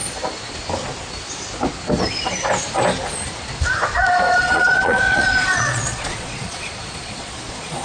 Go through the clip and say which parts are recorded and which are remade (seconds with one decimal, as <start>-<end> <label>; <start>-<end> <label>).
0.0-4.4 recorded; 4.4-7.8 remade